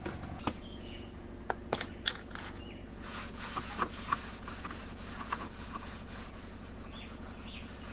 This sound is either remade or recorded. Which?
remade